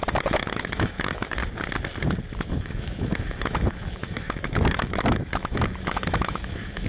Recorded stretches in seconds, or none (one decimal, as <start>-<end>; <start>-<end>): 1.4-2.5